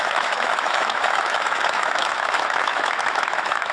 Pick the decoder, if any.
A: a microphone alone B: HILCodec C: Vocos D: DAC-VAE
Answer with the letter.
D